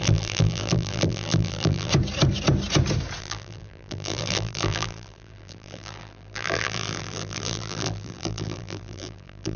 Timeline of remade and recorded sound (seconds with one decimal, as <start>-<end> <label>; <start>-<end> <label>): 0.0-1.9 remade; 1.9-3.2 recorded; 3.2-9.6 remade